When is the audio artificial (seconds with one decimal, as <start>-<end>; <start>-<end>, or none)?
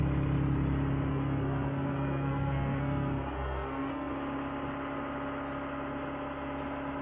1.1-4.1